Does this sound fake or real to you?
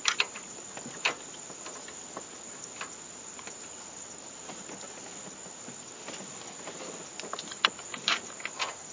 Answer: real